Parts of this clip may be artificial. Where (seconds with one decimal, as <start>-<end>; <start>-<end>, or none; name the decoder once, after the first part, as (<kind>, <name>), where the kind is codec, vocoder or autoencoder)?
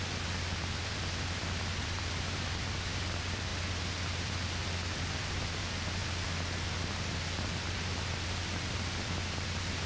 0.0-3.5 (vocoder, BigVGAN v2); 4.2-6.0; 8.7-9.9